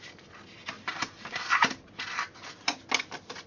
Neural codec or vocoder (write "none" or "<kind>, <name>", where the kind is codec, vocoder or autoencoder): none